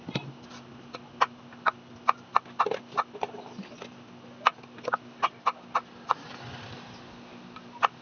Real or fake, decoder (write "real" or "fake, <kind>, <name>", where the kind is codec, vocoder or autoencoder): real